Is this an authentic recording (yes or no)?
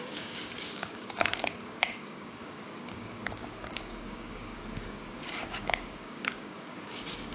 no